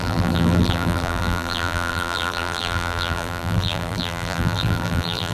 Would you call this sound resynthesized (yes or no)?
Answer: yes